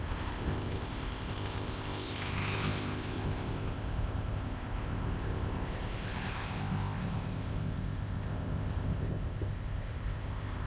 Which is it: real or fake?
fake